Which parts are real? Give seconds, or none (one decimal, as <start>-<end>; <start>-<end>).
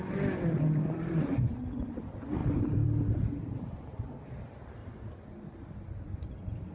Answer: 0.0-2.4; 4.3-4.8